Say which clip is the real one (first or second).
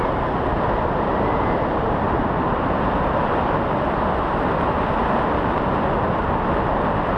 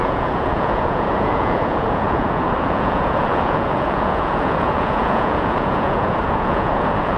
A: first